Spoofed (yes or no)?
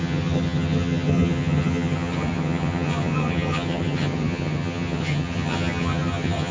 yes